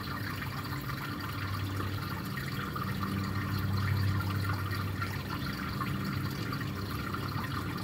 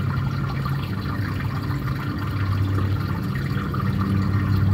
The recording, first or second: second